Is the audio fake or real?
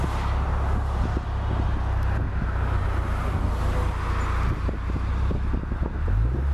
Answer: real